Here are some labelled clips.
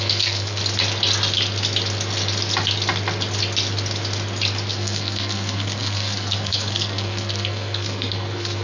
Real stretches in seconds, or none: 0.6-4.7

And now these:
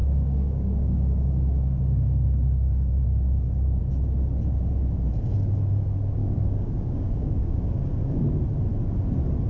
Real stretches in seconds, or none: 3.8-6.2; 7.8-9.5

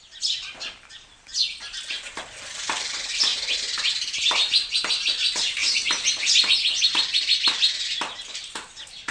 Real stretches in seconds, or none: 1.3-2.2; 5.6-6.8

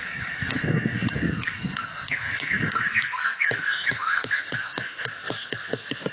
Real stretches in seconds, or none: none

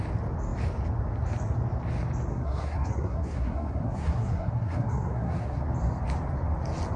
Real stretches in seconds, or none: 0.0-2.3; 5.6-7.0

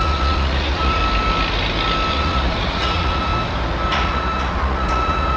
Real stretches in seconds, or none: 1.0-2.1; 3.3-3.9

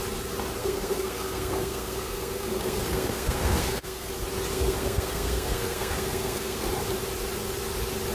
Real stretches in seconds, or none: 0.0-0.6; 4.1-4.5; 6.7-8.1